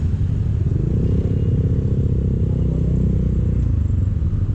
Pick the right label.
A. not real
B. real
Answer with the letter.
B